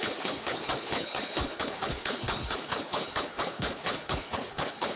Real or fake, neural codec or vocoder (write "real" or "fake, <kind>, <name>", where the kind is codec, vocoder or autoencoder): fake, codec, HILCodec